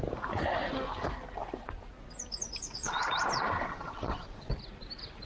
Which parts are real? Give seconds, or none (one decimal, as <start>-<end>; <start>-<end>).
0.0-2.6; 3.1-3.6; 4.5-5.3